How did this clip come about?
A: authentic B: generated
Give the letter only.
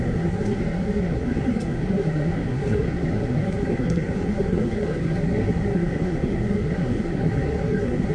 B